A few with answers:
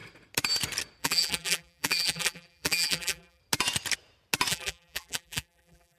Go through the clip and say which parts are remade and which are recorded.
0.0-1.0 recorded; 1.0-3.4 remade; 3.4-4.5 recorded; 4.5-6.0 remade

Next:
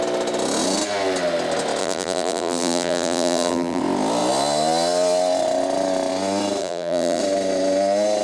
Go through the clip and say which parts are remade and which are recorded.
0.0-1.8 recorded; 1.8-3.8 remade; 3.8-6.6 recorded; 6.6-7.2 remade; 7.2-8.2 recorded